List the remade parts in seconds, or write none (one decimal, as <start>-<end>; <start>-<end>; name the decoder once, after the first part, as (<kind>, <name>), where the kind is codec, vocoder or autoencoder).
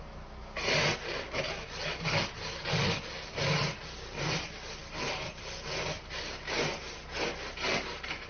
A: 4.8-6.4 (vocoder, BigVGAN v2)